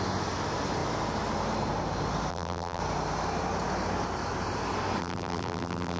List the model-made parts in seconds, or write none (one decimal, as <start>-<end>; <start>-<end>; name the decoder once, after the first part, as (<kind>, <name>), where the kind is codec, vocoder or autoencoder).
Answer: 2.3-2.8 (vocoder, BigVGAN v2); 5.0-6.0